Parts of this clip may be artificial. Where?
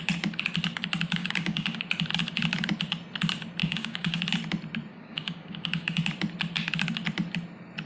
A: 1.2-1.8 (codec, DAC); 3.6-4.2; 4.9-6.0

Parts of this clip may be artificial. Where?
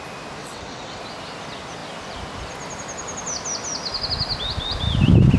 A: 0.4-1.0 (vocoder, WaveNeXt)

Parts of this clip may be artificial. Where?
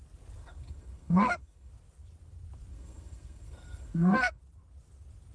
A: 0.4-1.7 (codec, SNAC); 2.7-4.4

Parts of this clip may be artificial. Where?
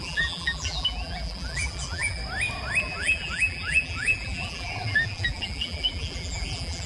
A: 0.0-2.2 (vocoder, BigVGAN v2); 2.8-6.9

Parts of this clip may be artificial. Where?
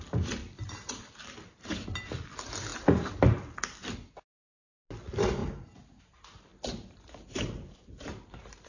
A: 0.4-1.0 (vocoder, BigVGAN v2); 6.5-8.7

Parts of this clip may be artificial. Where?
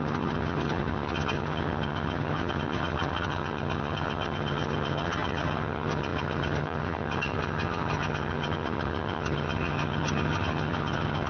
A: 0.0-11.3 (vocoder, HiFi-GAN)